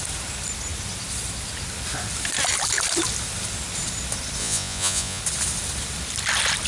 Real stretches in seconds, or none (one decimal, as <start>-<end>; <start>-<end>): 0.0-4.4; 5.2-6.7